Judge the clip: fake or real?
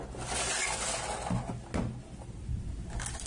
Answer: real